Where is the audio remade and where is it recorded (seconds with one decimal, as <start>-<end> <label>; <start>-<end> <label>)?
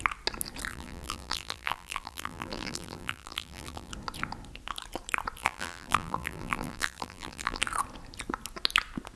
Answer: 0.0-0.7 recorded; 0.7-3.9 remade; 3.9-5.4 recorded; 5.4-7.6 remade; 7.6-9.1 recorded